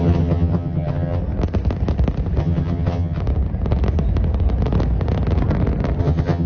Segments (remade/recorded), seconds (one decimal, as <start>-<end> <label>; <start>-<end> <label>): 0.0-1.2 remade; 1.2-2.4 recorded; 2.4-3.2 remade; 3.2-6.0 recorded; 6.0-6.5 remade